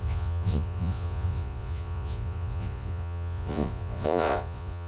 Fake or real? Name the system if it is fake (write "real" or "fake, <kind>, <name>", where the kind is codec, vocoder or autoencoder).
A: fake, vocoder, Vocos